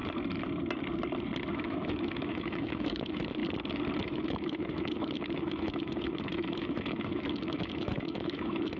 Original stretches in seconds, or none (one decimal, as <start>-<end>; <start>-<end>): 0.0-1.5; 3.4-4.0